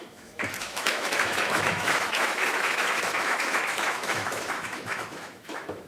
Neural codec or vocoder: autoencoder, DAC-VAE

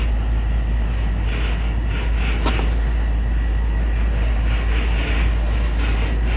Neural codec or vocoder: none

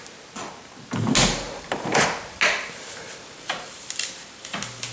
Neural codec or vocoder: none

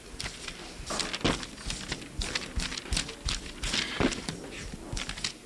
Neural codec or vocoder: none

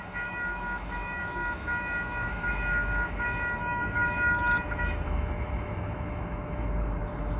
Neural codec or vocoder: autoencoder, DAC-VAE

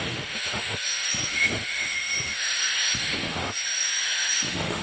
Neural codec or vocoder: autoencoder, DAC-VAE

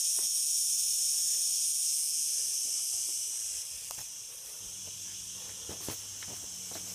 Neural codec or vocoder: none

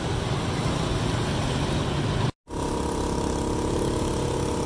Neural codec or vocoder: none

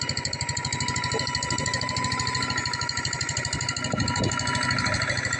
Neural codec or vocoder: none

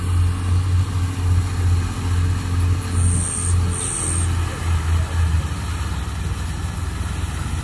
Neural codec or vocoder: none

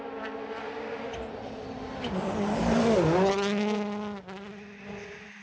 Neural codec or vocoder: none